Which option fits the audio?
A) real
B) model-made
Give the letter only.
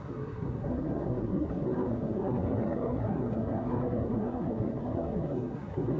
B